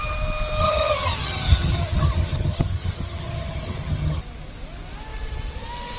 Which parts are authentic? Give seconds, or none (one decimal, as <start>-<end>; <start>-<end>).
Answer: 0.0-0.6; 4.2-6.0